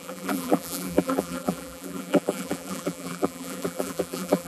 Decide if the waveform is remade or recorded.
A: remade